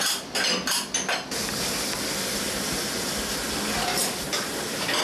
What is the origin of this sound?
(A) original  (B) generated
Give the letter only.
A